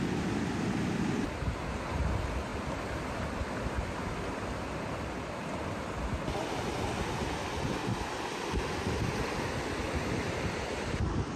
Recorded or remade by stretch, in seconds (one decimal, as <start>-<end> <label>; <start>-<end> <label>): 0.0-11.4 recorded

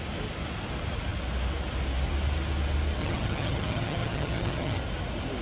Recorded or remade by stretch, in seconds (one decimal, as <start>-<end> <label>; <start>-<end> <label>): 0.0-3.0 recorded; 3.0-4.8 remade; 4.8-5.4 recorded

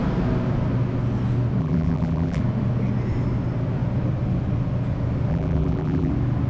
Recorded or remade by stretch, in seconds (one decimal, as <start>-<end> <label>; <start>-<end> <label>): 0.0-1.6 recorded; 1.6-2.4 remade; 2.4-5.3 recorded; 5.3-6.1 remade; 6.1-6.5 recorded